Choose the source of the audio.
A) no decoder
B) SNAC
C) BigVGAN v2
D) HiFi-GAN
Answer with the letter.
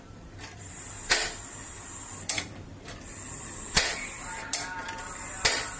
C